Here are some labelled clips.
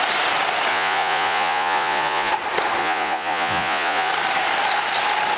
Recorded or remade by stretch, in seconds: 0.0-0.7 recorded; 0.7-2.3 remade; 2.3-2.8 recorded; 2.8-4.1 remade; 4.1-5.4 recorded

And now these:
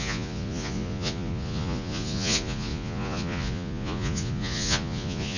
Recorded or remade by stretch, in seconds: 0.0-5.4 remade

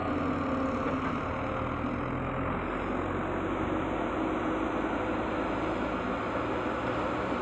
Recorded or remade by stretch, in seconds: 0.0-7.4 recorded

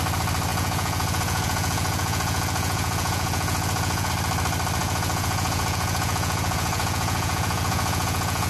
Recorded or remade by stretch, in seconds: 0.0-0.5 recorded; 0.5-4.1 remade; 4.1-4.8 recorded; 4.8-8.5 remade

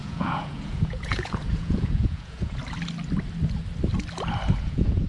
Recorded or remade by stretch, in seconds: 0.0-2.6 remade; 2.6-4.6 recorded; 4.6-5.1 remade

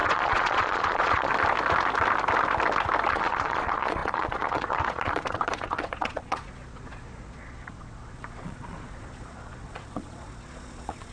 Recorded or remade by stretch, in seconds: 0.0-1.3 remade; 1.3-3.1 recorded; 3.1-11.1 remade